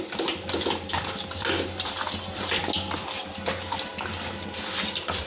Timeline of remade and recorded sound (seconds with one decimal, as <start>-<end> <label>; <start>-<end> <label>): 0.0-5.3 recorded